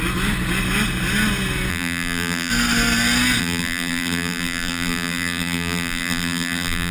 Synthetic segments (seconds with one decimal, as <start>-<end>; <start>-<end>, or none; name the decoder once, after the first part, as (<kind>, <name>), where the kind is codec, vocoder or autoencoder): 1.7-2.5 (vocoder, BigVGAN v2); 3.4-6.9